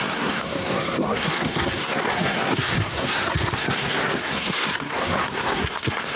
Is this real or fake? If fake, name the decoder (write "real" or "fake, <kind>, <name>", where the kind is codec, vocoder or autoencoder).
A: fake, codec, SNAC